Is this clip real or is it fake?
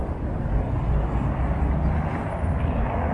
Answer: real